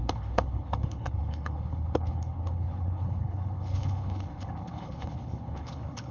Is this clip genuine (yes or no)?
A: no